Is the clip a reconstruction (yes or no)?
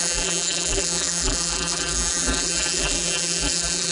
yes